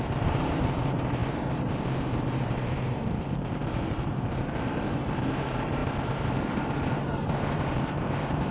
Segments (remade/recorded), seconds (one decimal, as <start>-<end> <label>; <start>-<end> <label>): 0.0-5.8 remade; 5.8-6.5 recorded; 6.5-8.5 remade

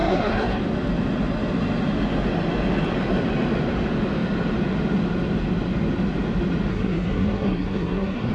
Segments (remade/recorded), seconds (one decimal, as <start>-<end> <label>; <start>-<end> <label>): 0.0-0.6 remade; 0.6-6.7 recorded; 6.7-8.3 remade

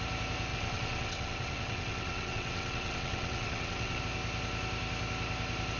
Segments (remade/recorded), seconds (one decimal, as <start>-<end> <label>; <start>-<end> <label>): 0.0-0.5 recorded; 0.5-4.0 remade; 4.0-5.8 recorded

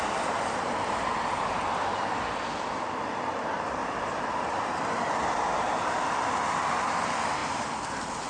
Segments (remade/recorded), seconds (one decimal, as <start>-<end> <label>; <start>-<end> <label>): 0.0-3.8 recorded; 3.8-5.1 remade; 5.1-7.4 recorded; 7.4-8.3 remade

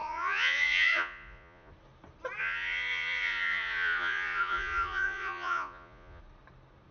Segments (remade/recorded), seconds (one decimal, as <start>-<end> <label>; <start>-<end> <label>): 0.0-1.7 remade; 1.7-2.4 recorded; 2.4-6.2 remade; 6.2-6.9 recorded